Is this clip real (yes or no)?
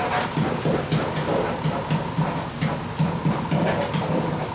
yes